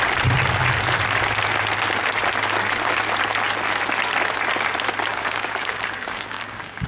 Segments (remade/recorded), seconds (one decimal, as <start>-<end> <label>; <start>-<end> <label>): 0.0-5.1 recorded; 5.1-6.9 remade